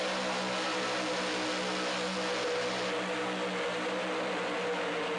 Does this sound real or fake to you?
real